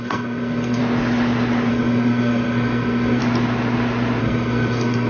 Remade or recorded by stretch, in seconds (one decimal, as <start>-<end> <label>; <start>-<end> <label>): 0.0-0.8 remade; 0.8-1.7 recorded; 1.7-3.2 remade; 3.2-4.2 recorded; 4.2-5.1 remade